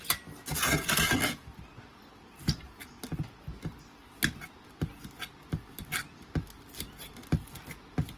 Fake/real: real